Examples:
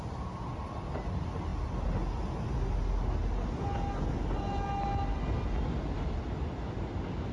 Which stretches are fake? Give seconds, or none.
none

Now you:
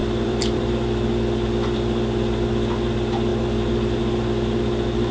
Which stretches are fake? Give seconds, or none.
0.0-1.2 (vocoder, BigVGAN v2)

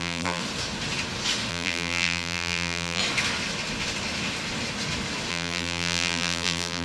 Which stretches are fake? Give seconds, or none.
0.0-0.4 (vocoder, BigVGAN v2); 1.5-3.0; 5.3-6.8

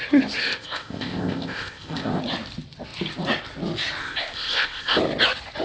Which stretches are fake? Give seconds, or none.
0.4-2.2 (codec, ZipCodec); 4.0-5.0

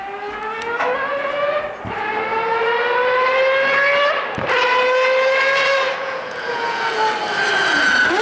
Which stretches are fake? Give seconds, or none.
6.0-7.0 (vocoder, Vocos)

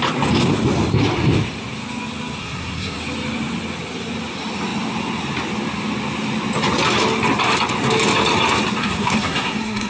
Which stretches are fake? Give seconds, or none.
2.4-3.0 (codec, SNAC); 8.8-9.9